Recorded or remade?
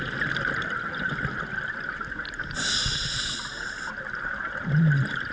recorded